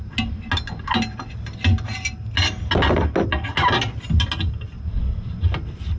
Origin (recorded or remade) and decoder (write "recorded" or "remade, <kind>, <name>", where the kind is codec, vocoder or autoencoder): recorded